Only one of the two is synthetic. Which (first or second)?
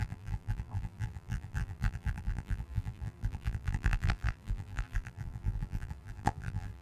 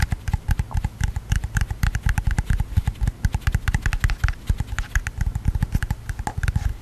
first